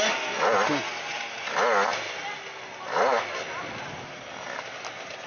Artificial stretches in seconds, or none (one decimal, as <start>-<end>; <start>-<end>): none